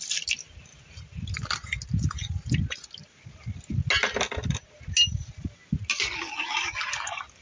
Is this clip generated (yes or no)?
no